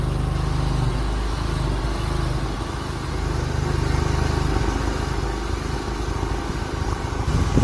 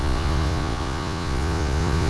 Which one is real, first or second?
first